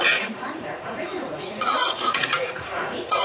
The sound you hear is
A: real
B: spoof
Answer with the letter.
B